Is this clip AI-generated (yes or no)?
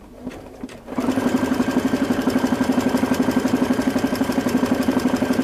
yes